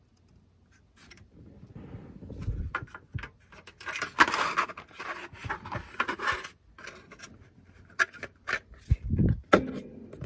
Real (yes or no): yes